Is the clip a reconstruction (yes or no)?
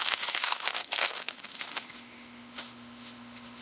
yes